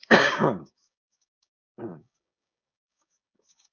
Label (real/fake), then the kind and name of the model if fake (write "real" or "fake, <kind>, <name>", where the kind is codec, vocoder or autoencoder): fake, codec, DAC